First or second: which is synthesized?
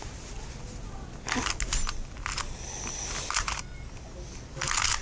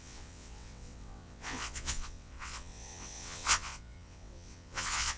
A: second